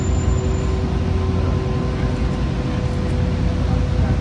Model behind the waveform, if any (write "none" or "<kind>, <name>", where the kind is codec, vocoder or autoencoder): none